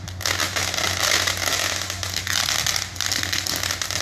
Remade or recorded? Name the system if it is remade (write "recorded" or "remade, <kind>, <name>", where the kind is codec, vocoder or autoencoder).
recorded